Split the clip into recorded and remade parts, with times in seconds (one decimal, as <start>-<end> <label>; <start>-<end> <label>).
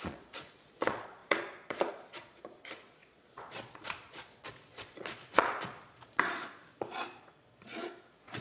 0.0-8.4 remade